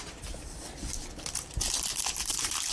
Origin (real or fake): fake